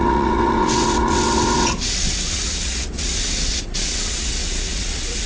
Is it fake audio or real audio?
fake